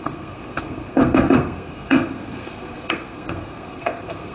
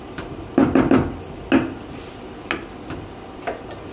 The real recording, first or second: second